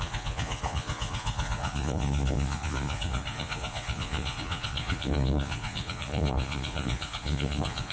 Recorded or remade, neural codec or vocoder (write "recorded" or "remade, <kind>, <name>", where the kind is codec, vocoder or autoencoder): remade, vocoder, Vocos